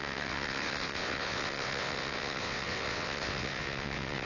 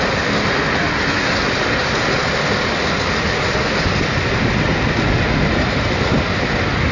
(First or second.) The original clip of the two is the second